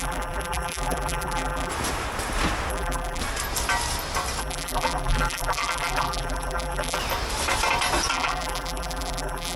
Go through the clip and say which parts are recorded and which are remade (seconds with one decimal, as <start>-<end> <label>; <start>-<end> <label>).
0.0-1.7 remade; 1.7-2.7 recorded; 2.7-3.2 remade; 3.2-4.4 recorded; 4.4-7.0 remade; 7.0-8.1 recorded; 8.1-9.6 remade